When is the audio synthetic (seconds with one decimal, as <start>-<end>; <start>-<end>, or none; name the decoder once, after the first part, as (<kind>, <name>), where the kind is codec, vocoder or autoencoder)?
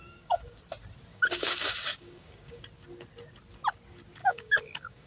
0.0-0.6 (codec, DAC); 1.1-2.6; 4.2-5.1